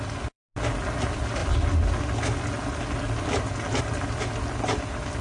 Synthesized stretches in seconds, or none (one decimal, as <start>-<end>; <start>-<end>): none